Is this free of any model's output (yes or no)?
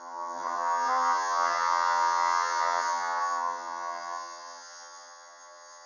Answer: no